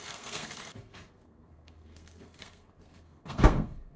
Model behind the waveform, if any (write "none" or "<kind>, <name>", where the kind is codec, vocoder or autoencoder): codec, SNAC